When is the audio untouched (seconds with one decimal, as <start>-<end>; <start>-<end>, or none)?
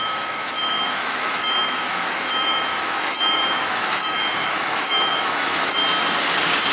5.8-6.7